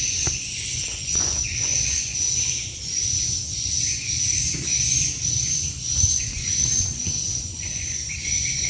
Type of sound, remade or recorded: remade